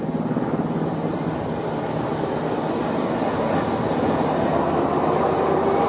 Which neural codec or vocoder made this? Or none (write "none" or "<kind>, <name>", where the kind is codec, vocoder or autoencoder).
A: none